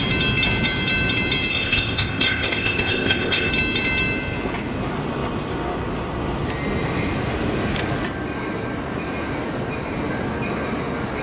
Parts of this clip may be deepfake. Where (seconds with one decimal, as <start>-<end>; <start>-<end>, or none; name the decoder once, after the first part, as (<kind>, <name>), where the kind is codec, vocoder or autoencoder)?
1.5-3.5 (codec, ZipCodec)